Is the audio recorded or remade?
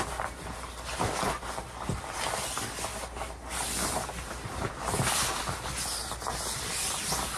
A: recorded